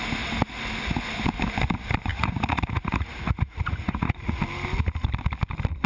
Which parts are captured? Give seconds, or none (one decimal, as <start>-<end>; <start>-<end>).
0.0-2.1; 4.4-5.9